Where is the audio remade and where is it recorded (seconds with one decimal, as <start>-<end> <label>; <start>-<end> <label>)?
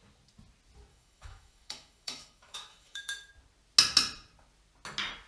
0.0-0.9 recorded; 0.9-3.3 remade; 3.3-5.3 recorded